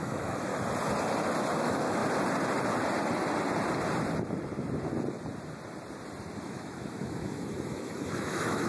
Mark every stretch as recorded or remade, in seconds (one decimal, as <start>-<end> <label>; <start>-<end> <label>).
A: 0.0-0.5 remade; 0.5-1.6 recorded; 1.6-2.0 remade; 2.0-6.4 recorded; 6.4-8.7 remade